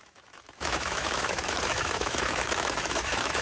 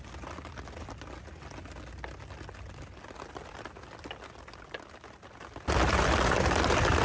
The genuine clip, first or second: second